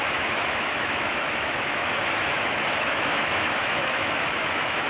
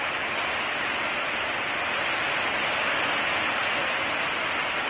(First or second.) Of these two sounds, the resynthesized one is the first